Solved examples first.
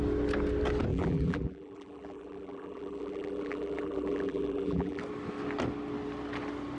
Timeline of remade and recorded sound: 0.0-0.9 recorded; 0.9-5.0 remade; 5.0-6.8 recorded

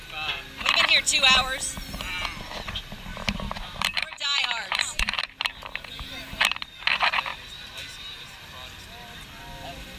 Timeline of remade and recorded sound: 0.0-3.1 recorded; 3.1-5.2 remade; 5.2-7.3 recorded; 7.3-8.4 remade; 8.4-10.0 recorded

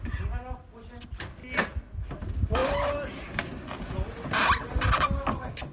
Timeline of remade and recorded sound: 0.0-5.7 recorded

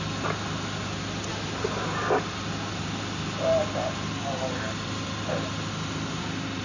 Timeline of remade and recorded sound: 0.0-6.6 recorded

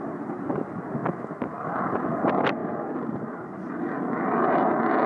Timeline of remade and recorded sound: 0.0-2.6 recorded; 2.6-4.6 remade; 4.6-5.1 recorded

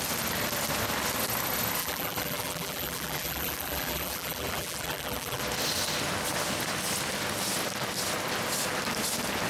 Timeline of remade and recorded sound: 0.0-1.8 recorded; 1.8-5.4 remade; 5.4-9.5 recorded

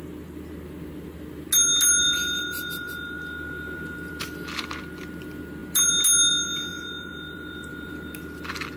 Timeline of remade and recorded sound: 0.0-2.0 recorded; 2.0-4.5 remade; 4.5-6.7 recorded; 6.7-7.9 remade; 7.9-8.8 recorded

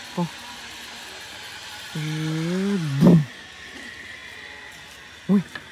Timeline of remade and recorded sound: 0.0-3.4 recorded; 3.4-4.2 remade; 4.2-5.7 recorded